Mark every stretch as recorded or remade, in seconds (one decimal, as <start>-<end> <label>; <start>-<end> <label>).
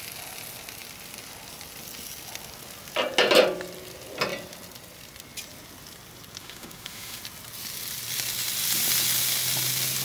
0.0-6.4 recorded; 6.4-7.2 remade; 7.2-10.0 recorded